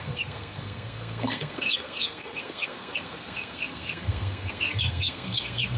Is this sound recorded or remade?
remade